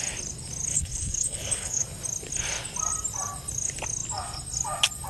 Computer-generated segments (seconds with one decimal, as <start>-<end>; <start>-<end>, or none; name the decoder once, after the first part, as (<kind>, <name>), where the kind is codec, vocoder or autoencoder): 0.7-1.8 (codec, HILCodec)